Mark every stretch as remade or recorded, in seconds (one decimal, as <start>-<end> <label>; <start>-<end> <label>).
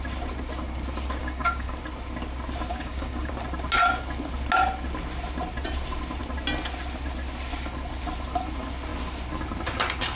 0.0-1.2 recorded; 1.2-1.8 remade; 1.8-2.7 recorded; 2.7-3.3 remade; 3.3-10.2 recorded